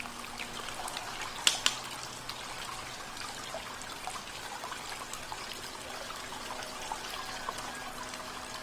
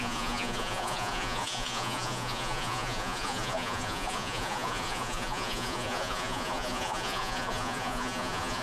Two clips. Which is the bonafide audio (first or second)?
first